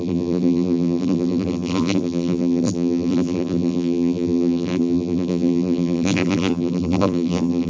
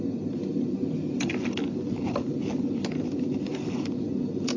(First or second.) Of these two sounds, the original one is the second